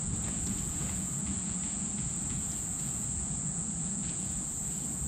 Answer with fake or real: fake